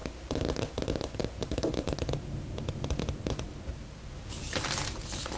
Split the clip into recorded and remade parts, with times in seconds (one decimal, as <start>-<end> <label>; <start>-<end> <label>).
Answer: 0.0-5.4 recorded